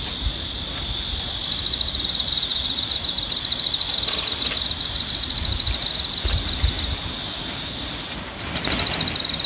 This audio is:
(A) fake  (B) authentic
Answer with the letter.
B